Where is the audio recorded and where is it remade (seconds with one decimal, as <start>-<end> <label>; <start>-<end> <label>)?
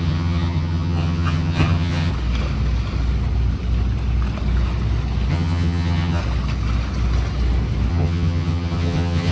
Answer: 0.0-2.1 remade; 2.1-5.3 recorded; 5.3-6.2 remade; 6.2-7.9 recorded; 7.9-9.3 remade